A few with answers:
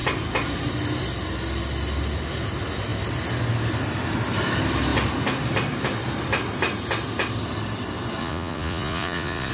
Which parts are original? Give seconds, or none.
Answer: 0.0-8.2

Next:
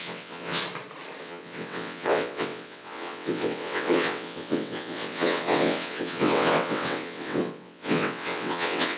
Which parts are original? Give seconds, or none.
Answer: 0.6-1.2

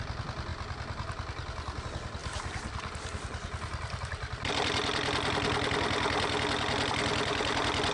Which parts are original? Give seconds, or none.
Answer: 0.0-7.9

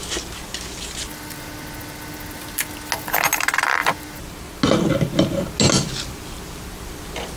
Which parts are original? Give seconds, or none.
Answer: 0.0-7.4